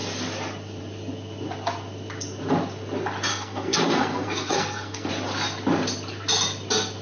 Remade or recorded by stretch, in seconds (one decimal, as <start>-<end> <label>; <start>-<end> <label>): 0.0-3.3 recorded; 3.3-5.1 remade; 5.1-7.0 recorded